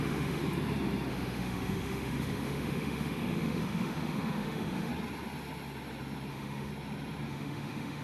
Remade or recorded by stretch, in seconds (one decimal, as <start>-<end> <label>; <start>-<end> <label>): 0.0-0.4 remade; 0.4-1.1 recorded; 1.1-4.9 remade; 4.9-6.3 recorded; 6.3-6.7 remade; 6.7-7.3 recorded; 7.3-8.0 remade